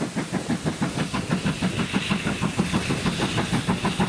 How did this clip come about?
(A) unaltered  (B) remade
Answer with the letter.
A